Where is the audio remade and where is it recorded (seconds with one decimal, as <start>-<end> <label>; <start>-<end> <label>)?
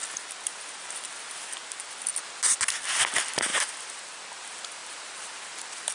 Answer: 0.0-3.5 recorded; 3.5-4.1 remade; 4.1-4.8 recorded; 4.8-5.9 remade